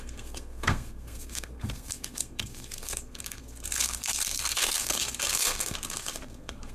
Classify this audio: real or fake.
fake